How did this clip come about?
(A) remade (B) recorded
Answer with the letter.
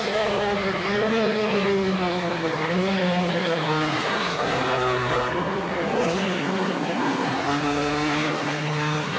A